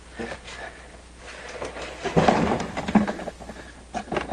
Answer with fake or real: real